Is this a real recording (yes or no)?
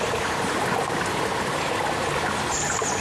yes